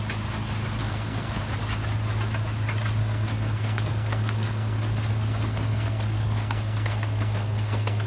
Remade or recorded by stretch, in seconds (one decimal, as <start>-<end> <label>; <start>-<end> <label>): 0.0-0.8 recorded; 0.8-1.4 remade; 1.4-3.0 recorded; 3.0-8.1 remade